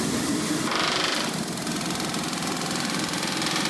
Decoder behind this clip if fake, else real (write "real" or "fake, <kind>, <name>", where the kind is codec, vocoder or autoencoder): real